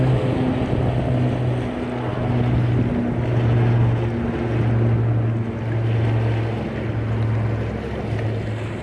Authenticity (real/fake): real